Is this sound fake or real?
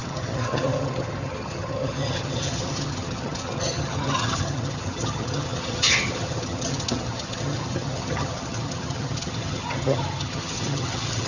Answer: fake